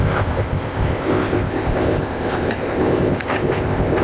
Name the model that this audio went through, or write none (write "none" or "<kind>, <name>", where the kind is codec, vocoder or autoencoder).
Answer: codec, ZipCodec